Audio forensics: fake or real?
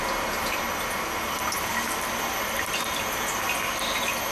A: real